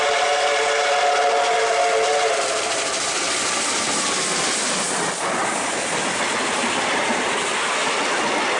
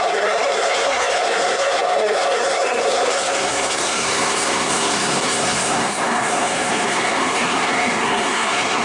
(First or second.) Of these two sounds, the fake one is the second